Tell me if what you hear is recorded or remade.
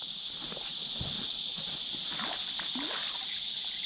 recorded